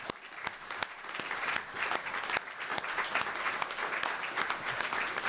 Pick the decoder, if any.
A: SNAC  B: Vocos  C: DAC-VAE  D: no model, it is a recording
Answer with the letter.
D